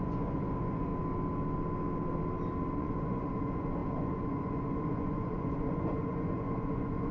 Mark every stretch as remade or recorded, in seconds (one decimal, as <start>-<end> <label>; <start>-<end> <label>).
0.0-0.9 remade; 0.9-2.8 recorded; 2.8-7.1 remade

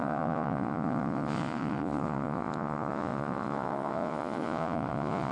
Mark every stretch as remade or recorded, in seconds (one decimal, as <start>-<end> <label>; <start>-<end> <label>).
0.0-5.3 remade